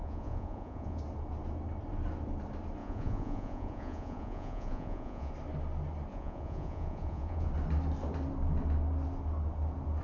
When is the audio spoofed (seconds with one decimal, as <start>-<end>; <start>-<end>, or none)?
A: 0.0-1.0; 2.8-5.3; 6.1-7.5